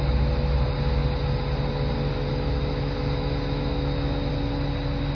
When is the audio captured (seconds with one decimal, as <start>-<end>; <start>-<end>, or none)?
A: 0.0-2.3; 4.3-5.1

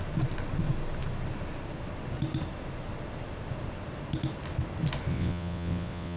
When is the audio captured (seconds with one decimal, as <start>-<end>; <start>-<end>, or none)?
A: 0.0-5.1

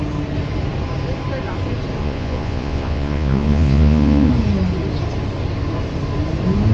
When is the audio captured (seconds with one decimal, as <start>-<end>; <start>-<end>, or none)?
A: 0.0-2.0; 4.3-6.7